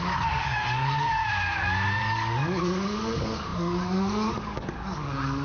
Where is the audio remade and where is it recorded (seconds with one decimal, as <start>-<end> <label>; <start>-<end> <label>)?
0.0-1.2 remade; 1.2-2.0 recorded; 2.0-5.4 remade